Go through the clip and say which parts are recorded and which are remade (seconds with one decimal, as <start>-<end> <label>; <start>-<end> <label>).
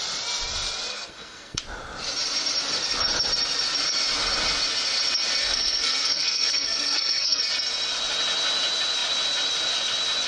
0.0-0.9 recorded; 0.9-1.6 remade; 1.6-5.4 recorded; 5.4-7.4 remade; 7.4-10.3 recorded